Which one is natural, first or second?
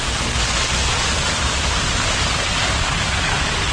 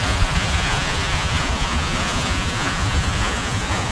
first